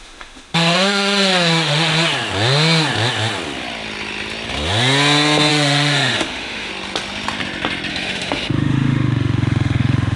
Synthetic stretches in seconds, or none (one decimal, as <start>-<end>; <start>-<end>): 0.0-1.9; 5.5-6.7; 7.9-10.2